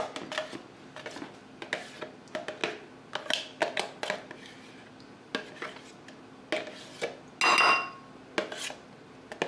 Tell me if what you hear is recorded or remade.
recorded